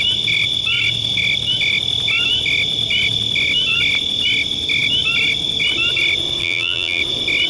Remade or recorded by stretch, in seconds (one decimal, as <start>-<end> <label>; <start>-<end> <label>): 0.0-6.4 recorded; 6.4-7.0 remade; 7.0-7.5 recorded